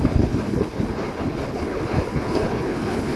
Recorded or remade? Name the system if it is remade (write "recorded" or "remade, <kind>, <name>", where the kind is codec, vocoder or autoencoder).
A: remade, codec, HILCodec